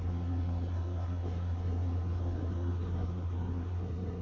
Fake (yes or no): yes